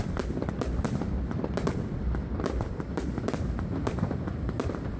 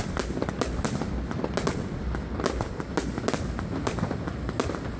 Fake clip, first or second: first